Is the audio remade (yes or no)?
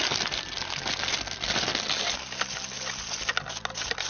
no